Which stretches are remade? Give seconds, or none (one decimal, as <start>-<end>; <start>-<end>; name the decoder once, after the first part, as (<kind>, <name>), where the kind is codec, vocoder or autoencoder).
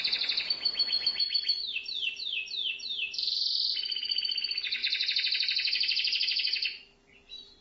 2.9-3.5 (vocoder, BigVGAN v2); 4.8-6.8